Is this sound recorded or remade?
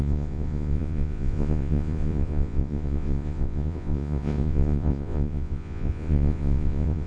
remade